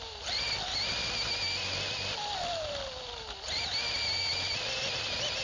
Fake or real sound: real